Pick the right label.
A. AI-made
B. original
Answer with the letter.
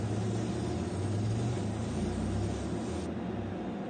B